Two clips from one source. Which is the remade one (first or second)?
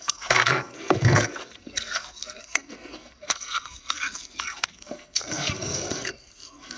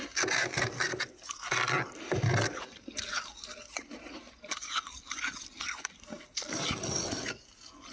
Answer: first